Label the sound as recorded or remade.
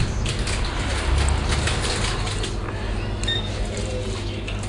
recorded